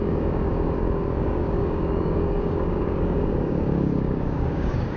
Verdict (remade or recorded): remade